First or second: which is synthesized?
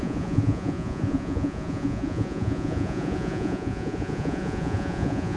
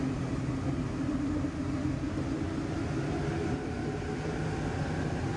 first